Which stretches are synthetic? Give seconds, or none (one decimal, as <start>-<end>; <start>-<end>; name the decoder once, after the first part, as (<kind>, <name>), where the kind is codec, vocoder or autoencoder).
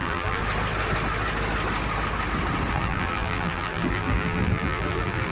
0.0-0.4 (vocoder, BigVGAN v2); 2.7-5.3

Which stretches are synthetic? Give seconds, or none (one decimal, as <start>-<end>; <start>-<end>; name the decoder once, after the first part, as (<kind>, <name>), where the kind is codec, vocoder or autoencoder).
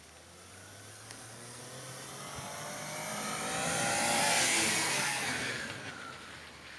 0.9-1.6 (codec, SNAC); 4.2-5.9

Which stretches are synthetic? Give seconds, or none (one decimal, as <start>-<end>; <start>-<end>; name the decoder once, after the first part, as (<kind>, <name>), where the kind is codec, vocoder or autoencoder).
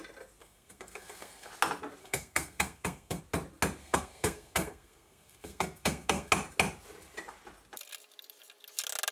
0.4-1.5 (codec, SNAC); 2.0-3.2; 3.8-6.3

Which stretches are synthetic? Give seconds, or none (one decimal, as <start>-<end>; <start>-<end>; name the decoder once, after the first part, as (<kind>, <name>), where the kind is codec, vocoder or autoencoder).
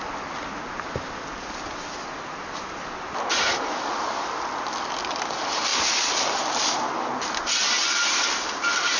none